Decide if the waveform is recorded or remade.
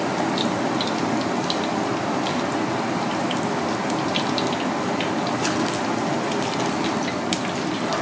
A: recorded